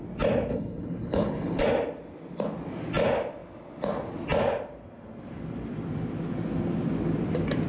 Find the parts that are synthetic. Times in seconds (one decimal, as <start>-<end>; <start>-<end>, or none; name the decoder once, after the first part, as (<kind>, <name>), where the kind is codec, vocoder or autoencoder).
0.5-1.6 (codec, HILCodec)